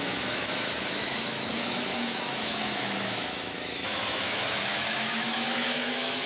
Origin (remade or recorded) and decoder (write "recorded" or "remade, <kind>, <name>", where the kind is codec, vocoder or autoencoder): remade, autoencoder, DAC-VAE